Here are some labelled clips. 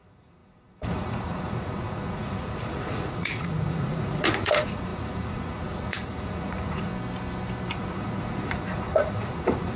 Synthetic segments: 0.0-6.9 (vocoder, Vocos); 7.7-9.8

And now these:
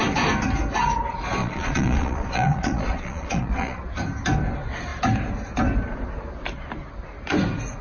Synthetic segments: 1.4-3.8 (vocoder, Vocos)

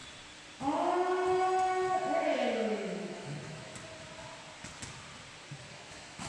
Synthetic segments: 2.0-3.7 (autoencoder, DAC-VAE); 5.7-6.3

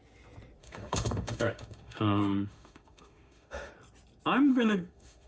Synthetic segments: 0.6-3.7 (autoencoder, DAC-VAE); 4.5-5.3

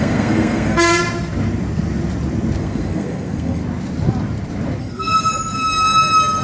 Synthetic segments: 0.0-1.0 (codec, SNAC); 2.6-3.6; 4.8-5.3

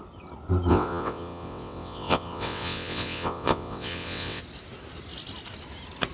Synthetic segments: 0.7-4.4 (vocoder, WaveNeXt)